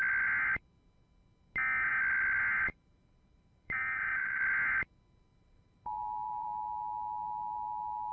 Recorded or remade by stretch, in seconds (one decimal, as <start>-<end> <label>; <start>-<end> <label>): 0.0-2.7 recorded; 2.7-4.4 remade; 4.4-5.3 recorded; 5.3-6.6 remade; 6.6-8.1 recorded